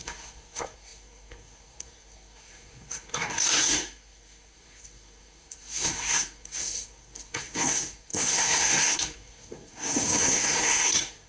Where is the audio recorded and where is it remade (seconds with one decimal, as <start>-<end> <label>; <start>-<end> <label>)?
0.0-11.3 remade